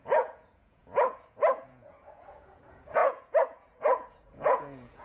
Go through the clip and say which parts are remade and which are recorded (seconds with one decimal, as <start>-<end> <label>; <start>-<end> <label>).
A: 0.0-5.0 remade